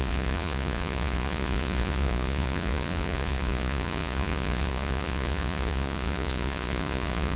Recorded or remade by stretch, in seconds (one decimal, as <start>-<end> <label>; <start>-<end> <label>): 0.0-7.4 remade